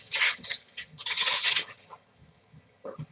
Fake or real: fake